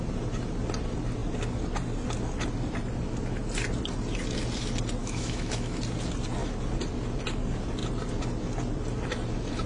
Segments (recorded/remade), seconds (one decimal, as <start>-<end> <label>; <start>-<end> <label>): 0.0-5.0 recorded; 5.0-5.8 remade; 5.8-9.7 recorded